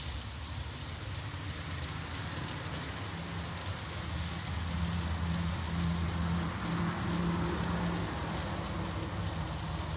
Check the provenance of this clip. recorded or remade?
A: recorded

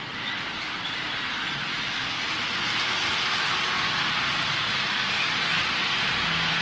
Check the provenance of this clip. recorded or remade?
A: recorded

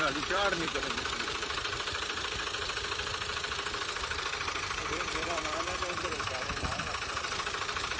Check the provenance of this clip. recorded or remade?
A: remade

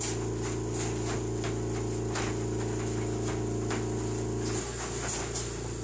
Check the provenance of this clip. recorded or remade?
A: recorded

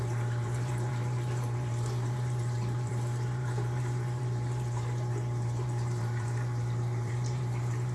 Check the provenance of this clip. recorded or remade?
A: remade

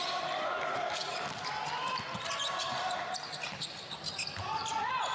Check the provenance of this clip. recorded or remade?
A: recorded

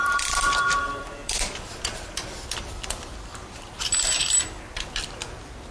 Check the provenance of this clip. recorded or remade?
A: remade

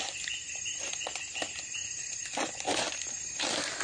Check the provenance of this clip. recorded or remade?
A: recorded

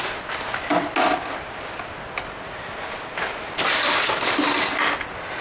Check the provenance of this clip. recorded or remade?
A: recorded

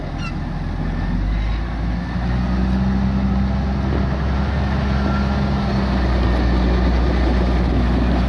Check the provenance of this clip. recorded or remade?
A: recorded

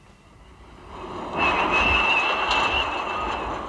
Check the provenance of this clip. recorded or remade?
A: recorded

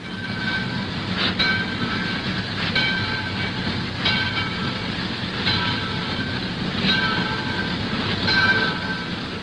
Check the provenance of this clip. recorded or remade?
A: recorded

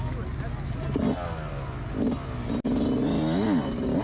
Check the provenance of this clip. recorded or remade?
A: recorded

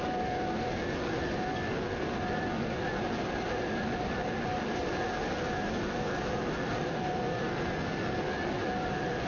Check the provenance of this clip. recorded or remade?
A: recorded